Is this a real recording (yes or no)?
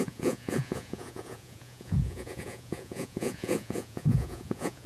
no